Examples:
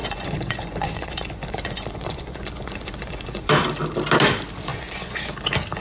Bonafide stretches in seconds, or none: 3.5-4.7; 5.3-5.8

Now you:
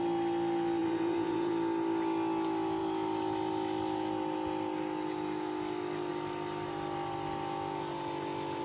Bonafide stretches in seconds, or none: 0.0-0.8; 1.5-8.6

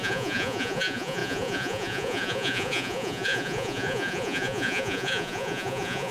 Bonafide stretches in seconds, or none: none

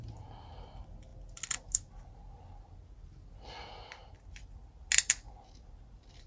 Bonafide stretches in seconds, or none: 0.0-6.3

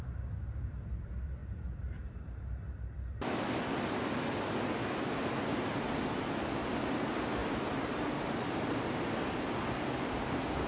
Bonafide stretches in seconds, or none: 0.0-10.7

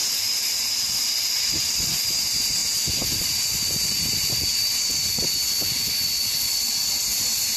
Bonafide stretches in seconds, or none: 0.0-0.7; 2.6-7.0

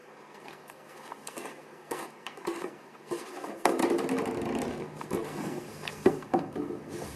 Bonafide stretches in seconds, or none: 3.8-4.7